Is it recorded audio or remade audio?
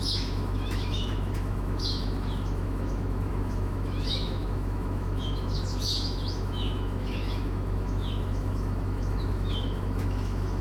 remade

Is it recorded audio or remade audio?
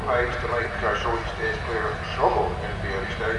recorded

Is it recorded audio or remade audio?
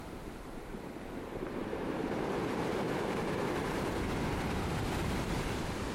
remade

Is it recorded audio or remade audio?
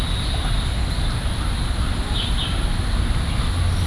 recorded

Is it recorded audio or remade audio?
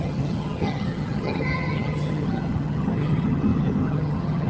remade